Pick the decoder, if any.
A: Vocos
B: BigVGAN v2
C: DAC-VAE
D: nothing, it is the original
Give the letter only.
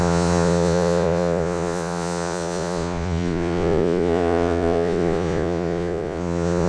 A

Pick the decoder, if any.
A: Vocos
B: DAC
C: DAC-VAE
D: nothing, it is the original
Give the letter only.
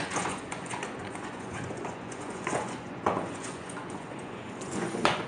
A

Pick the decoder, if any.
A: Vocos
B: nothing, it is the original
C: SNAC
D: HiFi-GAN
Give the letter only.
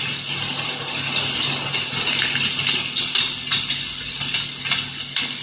B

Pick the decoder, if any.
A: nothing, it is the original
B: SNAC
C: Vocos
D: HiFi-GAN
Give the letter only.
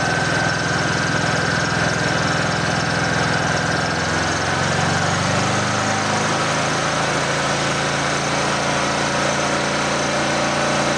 A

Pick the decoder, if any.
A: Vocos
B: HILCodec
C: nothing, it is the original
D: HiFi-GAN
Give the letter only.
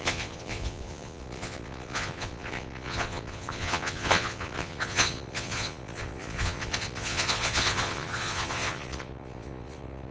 A